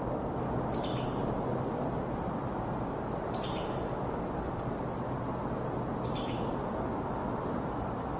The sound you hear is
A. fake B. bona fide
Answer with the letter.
B